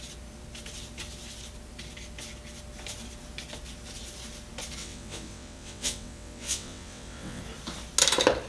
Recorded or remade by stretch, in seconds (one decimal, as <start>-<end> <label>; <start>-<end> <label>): 0.0-4.8 recorded; 4.8-7.4 remade; 7.4-8.5 recorded